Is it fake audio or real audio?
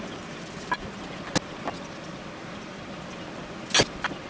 real